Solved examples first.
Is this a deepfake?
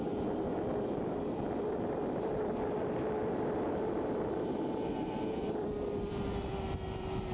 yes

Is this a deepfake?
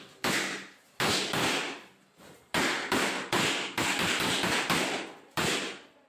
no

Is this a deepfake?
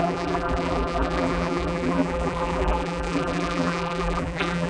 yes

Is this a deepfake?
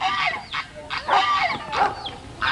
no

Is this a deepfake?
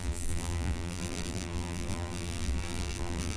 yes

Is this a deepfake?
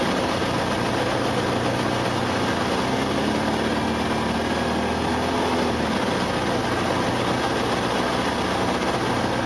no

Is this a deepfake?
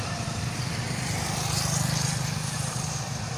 yes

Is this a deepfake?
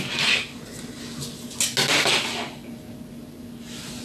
no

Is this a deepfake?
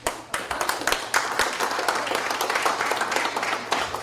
yes